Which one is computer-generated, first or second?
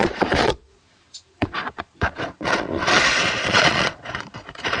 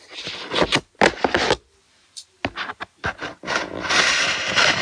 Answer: first